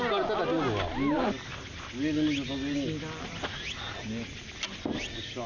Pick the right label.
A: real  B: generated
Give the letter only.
A